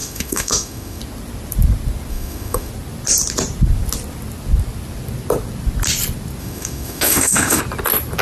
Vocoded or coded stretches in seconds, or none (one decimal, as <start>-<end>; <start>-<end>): 0.0-1.0; 2.1-2.7; 6.4-7.6